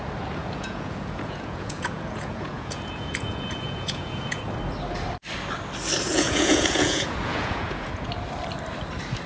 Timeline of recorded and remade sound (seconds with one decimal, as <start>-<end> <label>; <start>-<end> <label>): 0.0-0.4 recorded; 0.4-4.4 remade; 4.4-6.1 recorded; 6.1-8.1 remade; 8.1-9.3 recorded